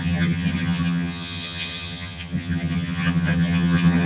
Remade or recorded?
remade